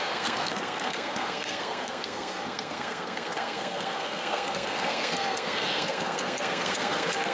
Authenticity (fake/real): fake